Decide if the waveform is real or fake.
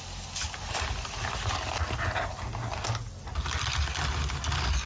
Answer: real